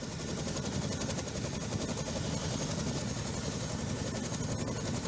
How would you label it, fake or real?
real